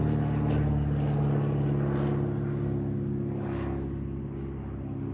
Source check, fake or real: real